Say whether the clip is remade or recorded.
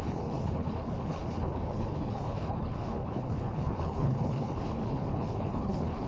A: remade